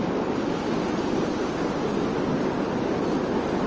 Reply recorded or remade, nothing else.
recorded